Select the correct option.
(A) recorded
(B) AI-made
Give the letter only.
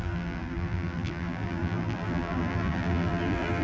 B